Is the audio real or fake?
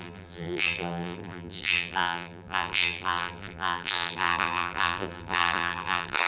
fake